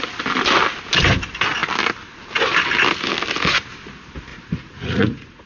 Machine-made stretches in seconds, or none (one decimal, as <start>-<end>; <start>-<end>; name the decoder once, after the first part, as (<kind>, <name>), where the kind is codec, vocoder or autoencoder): 4.3-5.5 (vocoder, Vocos)